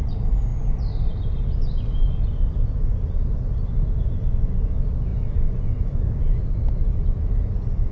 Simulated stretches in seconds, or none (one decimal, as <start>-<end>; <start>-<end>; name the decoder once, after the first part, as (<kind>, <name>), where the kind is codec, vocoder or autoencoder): 5.1-6.4 (vocoder, Vocos)